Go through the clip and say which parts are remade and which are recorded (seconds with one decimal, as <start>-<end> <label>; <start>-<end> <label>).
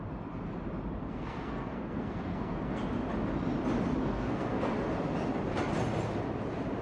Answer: 0.0-1.0 recorded; 1.0-2.8 remade; 2.8-4.0 recorded; 4.0-4.7 remade; 4.7-6.8 recorded